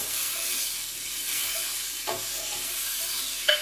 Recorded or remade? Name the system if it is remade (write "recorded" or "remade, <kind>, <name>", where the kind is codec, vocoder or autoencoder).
remade, codec, SNAC